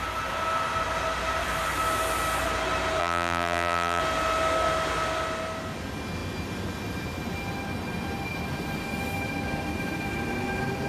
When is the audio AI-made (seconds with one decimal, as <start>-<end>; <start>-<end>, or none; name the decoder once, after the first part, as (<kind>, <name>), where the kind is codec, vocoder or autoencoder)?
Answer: 3.0-4.0 (vocoder, BigVGAN v2)